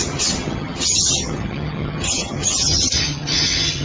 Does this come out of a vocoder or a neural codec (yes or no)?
yes